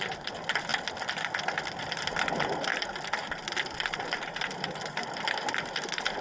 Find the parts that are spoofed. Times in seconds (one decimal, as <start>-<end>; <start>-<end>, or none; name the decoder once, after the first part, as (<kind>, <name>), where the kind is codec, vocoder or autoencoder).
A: none